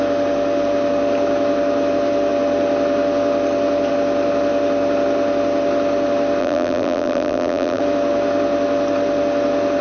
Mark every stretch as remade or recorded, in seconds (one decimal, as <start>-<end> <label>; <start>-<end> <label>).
0.0-6.4 recorded; 6.4-7.8 remade; 7.8-9.8 recorded